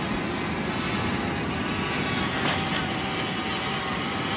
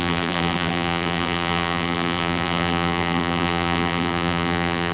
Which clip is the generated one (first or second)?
second